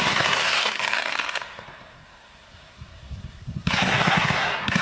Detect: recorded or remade remade